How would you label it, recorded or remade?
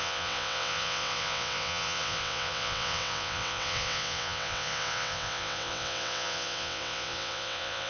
remade